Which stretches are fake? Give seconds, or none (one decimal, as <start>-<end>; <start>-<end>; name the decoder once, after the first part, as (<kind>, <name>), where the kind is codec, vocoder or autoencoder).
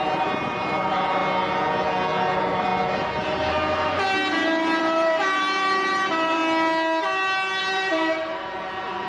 0.0-1.2 (vocoder, BigVGAN v2); 2.3-2.7; 4.8-6.4; 7.6-9.1